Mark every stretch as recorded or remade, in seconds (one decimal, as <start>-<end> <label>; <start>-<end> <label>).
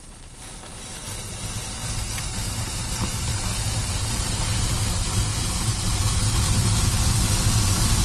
0.0-1.0 recorded; 1.0-3.9 remade; 3.9-5.3 recorded; 5.3-7.3 remade; 7.3-8.0 recorded